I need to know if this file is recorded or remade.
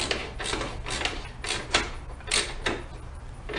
recorded